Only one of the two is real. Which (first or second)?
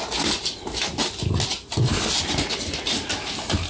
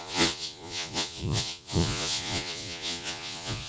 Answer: first